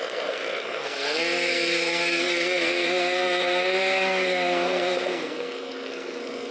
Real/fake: fake